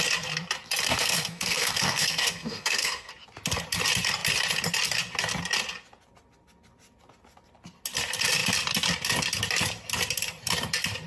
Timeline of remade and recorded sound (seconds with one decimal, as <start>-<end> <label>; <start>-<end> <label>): 0.0-0.9 recorded; 0.9-3.1 remade; 3.1-11.1 recorded